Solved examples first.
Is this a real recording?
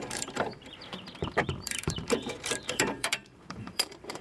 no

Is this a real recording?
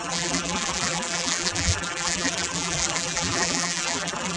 no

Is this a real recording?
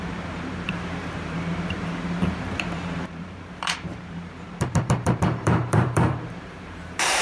no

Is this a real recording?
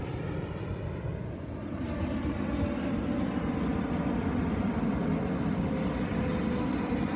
yes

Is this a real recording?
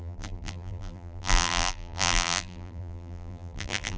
no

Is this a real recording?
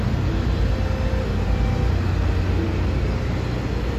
yes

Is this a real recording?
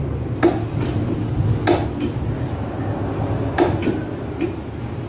yes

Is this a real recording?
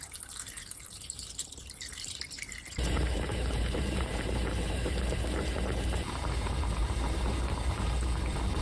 no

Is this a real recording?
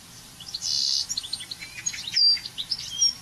yes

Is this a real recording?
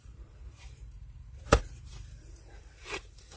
no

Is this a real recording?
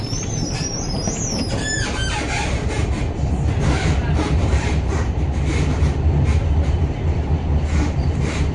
no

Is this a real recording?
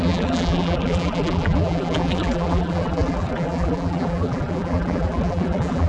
no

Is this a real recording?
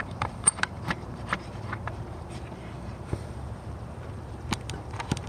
no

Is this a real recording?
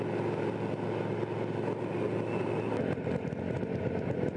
yes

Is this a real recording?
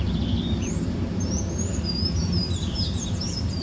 no